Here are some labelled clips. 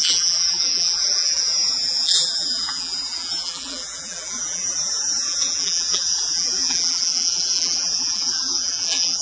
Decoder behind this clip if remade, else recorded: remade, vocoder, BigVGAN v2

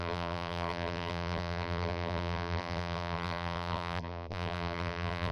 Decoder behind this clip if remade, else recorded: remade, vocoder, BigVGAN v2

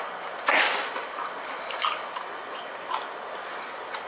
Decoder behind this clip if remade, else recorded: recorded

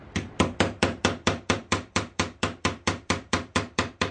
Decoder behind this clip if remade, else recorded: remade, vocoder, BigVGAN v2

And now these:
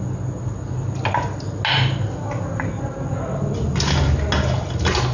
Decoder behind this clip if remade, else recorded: recorded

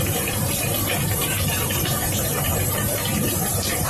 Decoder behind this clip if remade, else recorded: remade, vocoder, BigVGAN v2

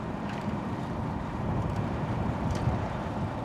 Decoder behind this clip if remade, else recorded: remade, vocoder, BigVGAN v2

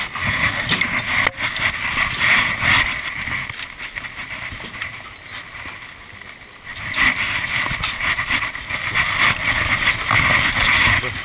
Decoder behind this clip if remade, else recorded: recorded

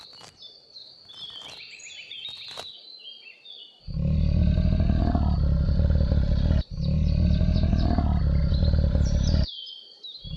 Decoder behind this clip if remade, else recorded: recorded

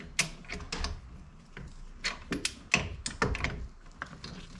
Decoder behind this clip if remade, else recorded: recorded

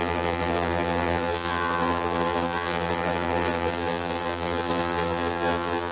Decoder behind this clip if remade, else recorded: remade, vocoder, BigVGAN v2